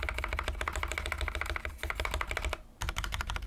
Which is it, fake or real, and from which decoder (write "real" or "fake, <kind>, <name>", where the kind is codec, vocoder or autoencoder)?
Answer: real